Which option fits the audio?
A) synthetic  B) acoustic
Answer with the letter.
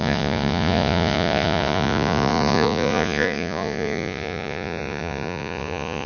A